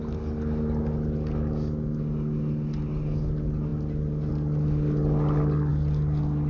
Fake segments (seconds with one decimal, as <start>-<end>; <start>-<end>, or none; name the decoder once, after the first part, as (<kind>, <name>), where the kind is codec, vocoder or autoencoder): none